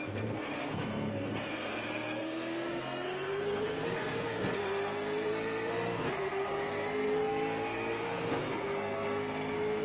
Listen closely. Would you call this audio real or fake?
fake